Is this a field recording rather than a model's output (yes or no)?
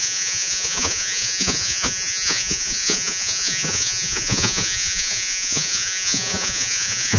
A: no